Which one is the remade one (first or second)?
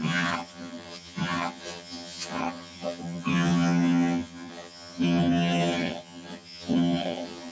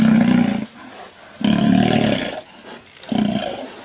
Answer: first